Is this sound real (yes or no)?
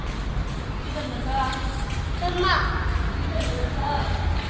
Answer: yes